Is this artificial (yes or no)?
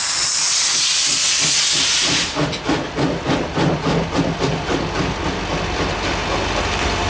no